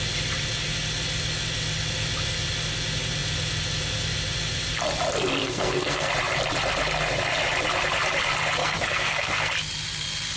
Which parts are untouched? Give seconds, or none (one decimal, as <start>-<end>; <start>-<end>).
0.0-5.4; 6.1-8.6; 9.5-10.4